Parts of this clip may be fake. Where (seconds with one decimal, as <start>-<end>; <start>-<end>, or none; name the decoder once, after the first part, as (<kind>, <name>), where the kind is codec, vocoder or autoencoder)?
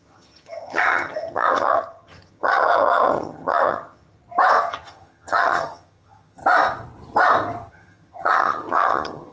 0.0-4.2 (vocoder, HiFi-GAN); 4.7-6.4; 7.7-9.3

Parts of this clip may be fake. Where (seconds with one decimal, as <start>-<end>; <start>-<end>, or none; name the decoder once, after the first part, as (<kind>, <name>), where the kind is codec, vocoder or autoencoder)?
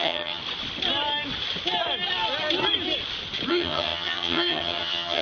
0.0-0.4 (vocoder, HiFi-GAN); 3.5-5.2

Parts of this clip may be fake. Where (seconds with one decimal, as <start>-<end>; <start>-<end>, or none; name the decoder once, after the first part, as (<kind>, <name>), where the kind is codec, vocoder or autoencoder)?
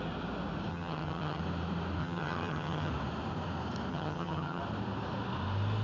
0.7-1.4 (vocoder, HiFi-GAN); 2.0-2.9; 3.9-4.6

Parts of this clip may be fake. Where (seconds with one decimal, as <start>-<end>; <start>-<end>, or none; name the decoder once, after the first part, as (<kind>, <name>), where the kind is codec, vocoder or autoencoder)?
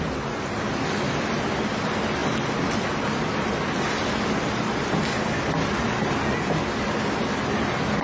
none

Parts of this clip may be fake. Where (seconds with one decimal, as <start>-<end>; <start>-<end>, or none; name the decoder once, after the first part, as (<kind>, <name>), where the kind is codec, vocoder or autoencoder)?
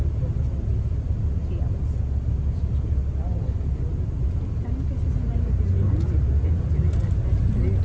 none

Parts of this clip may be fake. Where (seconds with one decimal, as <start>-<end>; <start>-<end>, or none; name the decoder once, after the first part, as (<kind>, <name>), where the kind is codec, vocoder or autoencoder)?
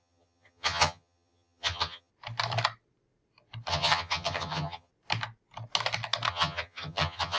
0.0-2.1 (vocoder, HiFi-GAN); 3.7-4.9; 6.3-7.4